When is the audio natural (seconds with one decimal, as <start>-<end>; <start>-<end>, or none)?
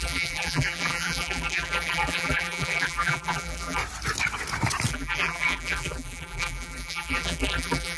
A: 3.8-4.9